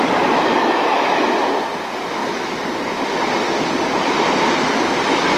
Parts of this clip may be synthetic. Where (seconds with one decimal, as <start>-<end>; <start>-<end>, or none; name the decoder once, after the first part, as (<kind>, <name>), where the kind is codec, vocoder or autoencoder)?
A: none